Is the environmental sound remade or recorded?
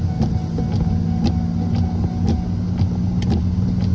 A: recorded